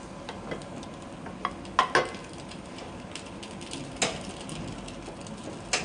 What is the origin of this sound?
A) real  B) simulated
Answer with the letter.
A